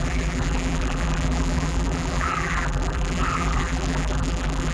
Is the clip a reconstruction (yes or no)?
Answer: yes